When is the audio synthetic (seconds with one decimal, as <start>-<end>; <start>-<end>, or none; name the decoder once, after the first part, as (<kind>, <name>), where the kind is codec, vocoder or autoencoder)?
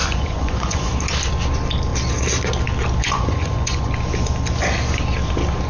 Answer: 0.0-0.9 (vocoder, Vocos); 3.0-3.9